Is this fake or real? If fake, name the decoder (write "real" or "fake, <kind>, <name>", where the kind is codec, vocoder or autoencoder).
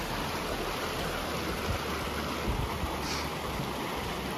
real